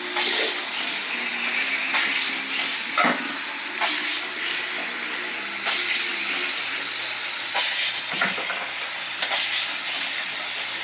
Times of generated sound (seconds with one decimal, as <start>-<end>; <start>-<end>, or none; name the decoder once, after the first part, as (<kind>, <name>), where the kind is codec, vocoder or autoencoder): 1.3-1.8 (vocoder, BigVGAN v2); 4.1-5.0; 6.1-7.6